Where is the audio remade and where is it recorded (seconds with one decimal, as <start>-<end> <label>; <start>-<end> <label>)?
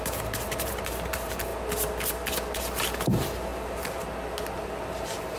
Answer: 0.0-1.5 remade; 1.5-3.0 recorded; 3.0-3.5 remade; 3.5-4.9 recorded; 4.9-5.4 remade